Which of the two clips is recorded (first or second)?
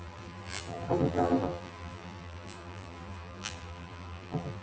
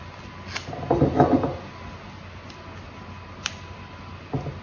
second